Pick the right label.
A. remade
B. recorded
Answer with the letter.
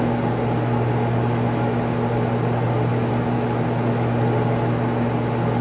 B